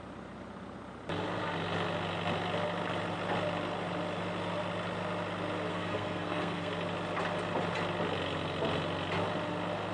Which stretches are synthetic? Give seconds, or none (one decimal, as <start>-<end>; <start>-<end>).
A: 5.7-6.7